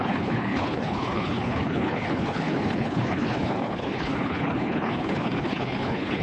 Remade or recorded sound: remade